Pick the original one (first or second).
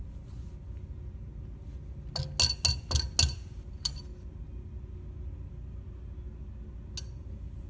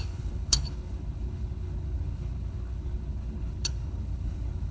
first